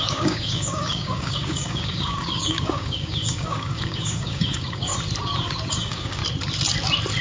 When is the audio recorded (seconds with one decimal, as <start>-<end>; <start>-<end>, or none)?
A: 4.9-5.7; 6.2-7.2